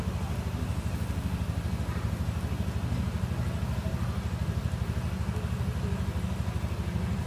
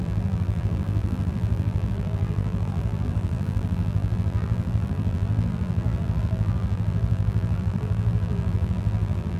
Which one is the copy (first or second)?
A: second